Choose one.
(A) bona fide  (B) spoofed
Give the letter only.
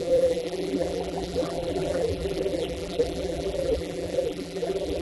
B